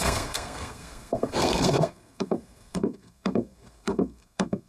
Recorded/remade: remade